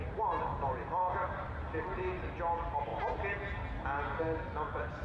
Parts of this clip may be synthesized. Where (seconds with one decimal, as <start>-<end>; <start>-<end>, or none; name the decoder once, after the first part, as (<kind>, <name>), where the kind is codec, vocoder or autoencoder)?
0.0-2.9 (vocoder, BigVGAN v2); 4.2-5.0